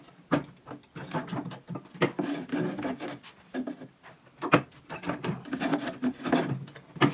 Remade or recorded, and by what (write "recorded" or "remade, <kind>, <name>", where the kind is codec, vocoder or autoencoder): recorded